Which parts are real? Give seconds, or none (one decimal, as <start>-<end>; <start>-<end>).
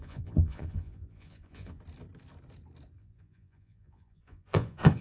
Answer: 1.8-3.0